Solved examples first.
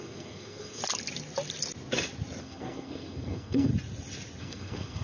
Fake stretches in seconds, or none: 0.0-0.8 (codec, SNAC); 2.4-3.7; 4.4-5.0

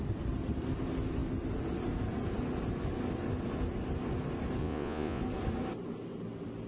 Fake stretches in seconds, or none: 4.6-5.2 (vocoder, Vocos)

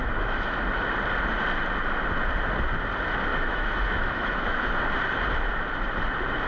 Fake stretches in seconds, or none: 0.0-0.6 (autoencoder, DAC-VAE); 3.3-4.8

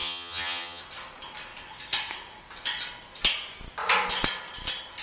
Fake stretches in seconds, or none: 0.0-0.8 (vocoder, HiFi-GAN)

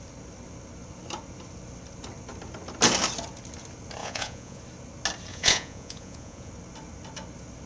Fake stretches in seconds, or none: 4.0-4.6 (vocoder, Vocos); 5.3-6.5